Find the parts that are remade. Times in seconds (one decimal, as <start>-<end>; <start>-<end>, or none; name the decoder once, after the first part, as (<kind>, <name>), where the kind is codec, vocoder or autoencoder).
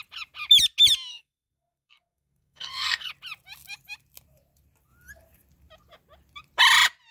1.1-3.1 (codec, SNAC)